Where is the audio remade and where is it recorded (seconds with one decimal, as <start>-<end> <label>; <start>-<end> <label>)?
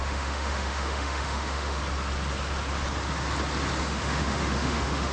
0.0-1.8 remade; 1.8-3.8 recorded; 3.8-5.1 remade